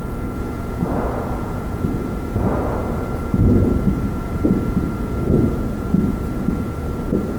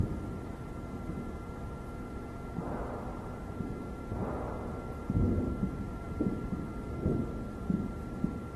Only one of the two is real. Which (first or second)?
second